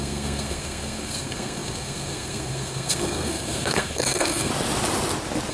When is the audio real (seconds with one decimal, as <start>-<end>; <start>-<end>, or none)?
4.5-5.5